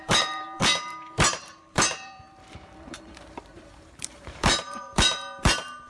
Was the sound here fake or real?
fake